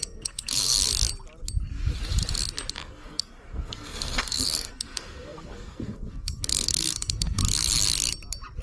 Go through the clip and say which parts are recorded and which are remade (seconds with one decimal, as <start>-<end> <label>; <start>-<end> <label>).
0.0-0.9 remade; 0.9-2.7 recorded; 2.7-7.4 remade; 7.4-8.6 recorded